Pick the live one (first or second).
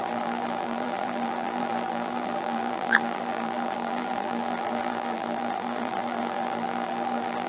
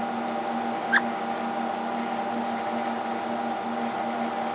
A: second